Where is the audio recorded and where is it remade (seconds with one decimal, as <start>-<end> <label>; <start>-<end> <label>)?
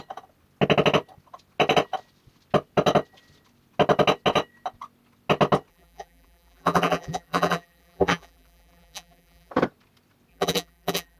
0.0-5.7 recorded; 5.7-9.5 remade; 9.5-10.3 recorded; 10.3-11.2 remade